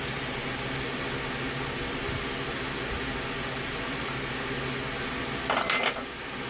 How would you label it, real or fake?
real